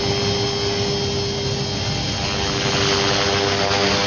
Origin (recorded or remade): recorded